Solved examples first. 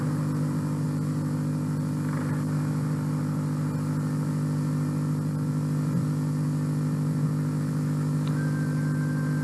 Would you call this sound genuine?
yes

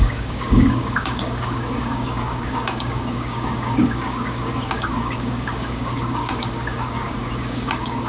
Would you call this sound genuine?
no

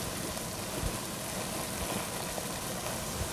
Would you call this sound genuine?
yes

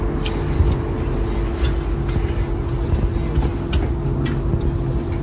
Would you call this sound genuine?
yes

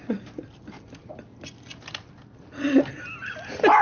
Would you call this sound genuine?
yes